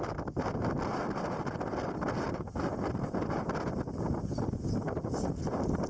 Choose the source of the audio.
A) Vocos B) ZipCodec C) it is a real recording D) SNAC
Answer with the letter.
C